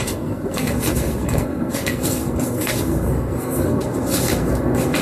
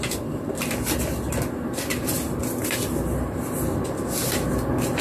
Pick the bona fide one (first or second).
second